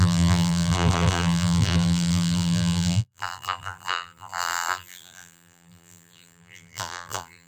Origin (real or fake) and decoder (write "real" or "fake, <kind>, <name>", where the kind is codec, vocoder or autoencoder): fake, vocoder, BigVGAN v2